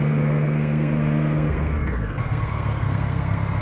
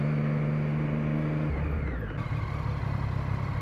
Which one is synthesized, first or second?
first